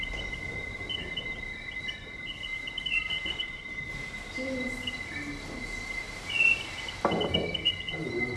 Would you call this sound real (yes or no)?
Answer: yes